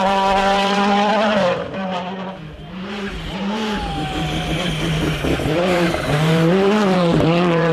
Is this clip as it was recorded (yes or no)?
no